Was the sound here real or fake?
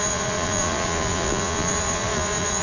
fake